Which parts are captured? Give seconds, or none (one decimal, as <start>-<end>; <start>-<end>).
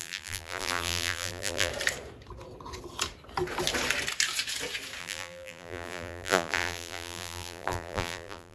1.7-5.0